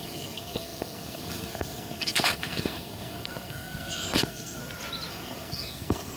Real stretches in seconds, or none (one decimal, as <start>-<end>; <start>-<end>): 4.6-5.1